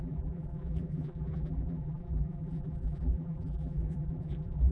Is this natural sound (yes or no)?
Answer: no